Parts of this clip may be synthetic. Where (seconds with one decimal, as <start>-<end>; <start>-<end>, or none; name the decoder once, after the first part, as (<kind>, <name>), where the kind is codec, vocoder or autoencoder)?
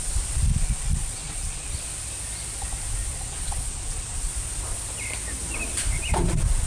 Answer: 0.5-1.7 (vocoder, Vocos); 3.1-4.3